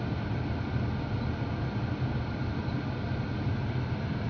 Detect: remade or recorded recorded